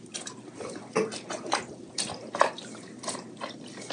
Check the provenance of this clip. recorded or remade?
remade